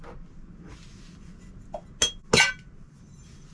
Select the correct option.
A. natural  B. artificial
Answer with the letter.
A